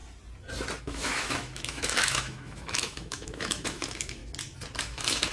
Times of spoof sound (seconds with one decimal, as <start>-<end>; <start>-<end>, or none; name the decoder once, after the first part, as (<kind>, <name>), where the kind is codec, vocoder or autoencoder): 0.8-4.2 (autoencoder, DAC-VAE); 4.8-5.3